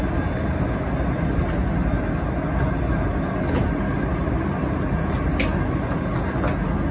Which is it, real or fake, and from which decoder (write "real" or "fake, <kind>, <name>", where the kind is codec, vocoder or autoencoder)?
real